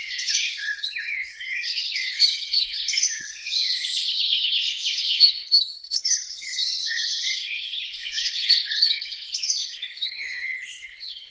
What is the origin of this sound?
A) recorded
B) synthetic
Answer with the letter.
B